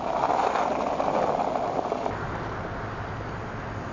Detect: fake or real real